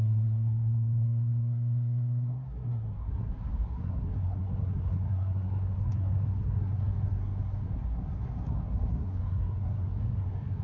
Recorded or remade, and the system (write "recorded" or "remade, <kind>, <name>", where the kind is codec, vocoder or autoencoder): remade, codec, SNAC